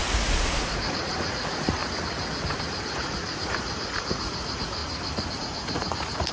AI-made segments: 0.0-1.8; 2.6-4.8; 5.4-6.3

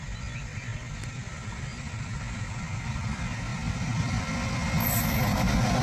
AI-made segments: none

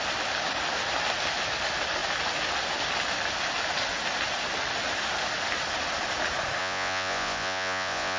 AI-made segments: 6.6-8.2

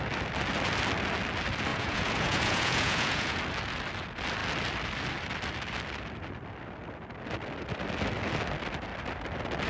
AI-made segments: 1.7-3.4